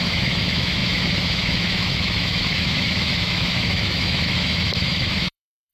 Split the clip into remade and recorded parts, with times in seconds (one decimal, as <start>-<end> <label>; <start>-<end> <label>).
0.0-5.7 remade

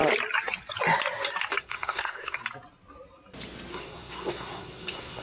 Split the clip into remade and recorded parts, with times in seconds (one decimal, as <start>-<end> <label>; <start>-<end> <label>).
0.0-1.6 recorded; 1.6-2.4 remade; 2.4-3.7 recorded; 3.7-5.2 remade

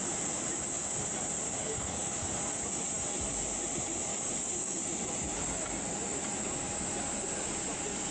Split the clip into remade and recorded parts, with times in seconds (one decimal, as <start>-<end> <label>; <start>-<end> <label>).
0.0-1.6 recorded; 1.6-2.3 remade; 2.3-4.1 recorded; 4.1-4.8 remade; 4.8-8.1 recorded

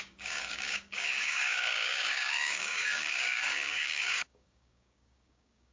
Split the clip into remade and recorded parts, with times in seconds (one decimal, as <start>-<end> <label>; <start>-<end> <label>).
0.0-5.7 remade